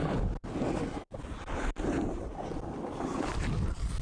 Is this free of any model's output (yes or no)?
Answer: yes